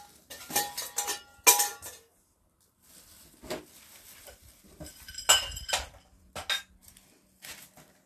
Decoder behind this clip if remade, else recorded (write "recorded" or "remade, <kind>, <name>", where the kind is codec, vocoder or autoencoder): recorded